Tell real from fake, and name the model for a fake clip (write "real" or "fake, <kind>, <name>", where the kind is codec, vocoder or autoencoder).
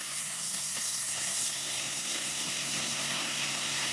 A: fake, codec, SNAC